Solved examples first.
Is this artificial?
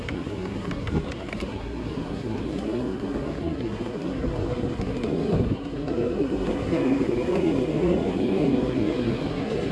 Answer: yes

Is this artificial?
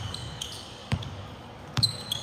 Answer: yes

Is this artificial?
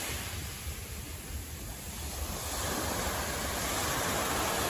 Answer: no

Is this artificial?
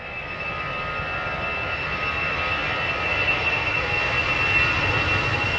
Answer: no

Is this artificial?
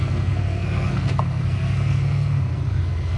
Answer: yes